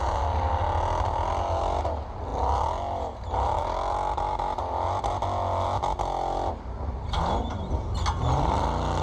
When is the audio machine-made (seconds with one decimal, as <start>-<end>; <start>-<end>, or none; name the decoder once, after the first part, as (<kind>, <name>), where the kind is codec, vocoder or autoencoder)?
none